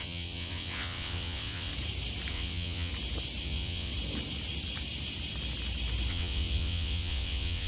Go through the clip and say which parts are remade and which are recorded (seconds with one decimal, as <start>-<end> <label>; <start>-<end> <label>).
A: 0.0-1.7 remade; 1.7-2.3 recorded; 2.3-2.9 remade; 2.9-3.4 recorded; 3.4-3.9 remade; 3.9-6.1 recorded; 6.1-7.7 remade